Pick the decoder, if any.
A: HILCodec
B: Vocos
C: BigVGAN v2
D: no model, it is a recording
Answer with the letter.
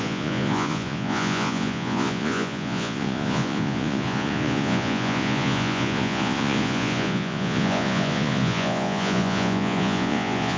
B